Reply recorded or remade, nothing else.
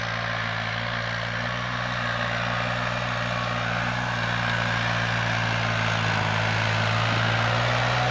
recorded